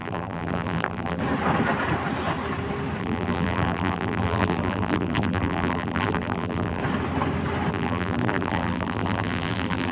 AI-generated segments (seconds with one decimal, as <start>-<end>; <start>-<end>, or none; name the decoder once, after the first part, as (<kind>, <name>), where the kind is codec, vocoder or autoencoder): 0.0-1.2 (vocoder, BigVGAN v2); 3.0-6.8; 7.7-9.9